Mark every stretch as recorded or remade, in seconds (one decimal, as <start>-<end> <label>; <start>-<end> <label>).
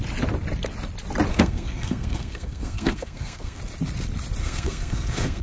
0.0-1.3 recorded; 1.3-3.6 remade; 3.6-4.4 recorded; 4.4-5.4 remade